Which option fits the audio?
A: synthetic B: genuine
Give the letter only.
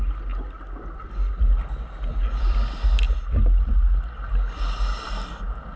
B